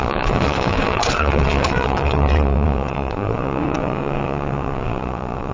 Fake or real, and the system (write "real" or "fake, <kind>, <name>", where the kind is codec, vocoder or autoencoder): fake, vocoder, WaveNeXt